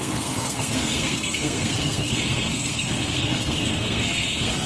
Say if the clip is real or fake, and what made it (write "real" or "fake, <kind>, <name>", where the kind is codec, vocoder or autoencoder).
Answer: fake, codec, SNAC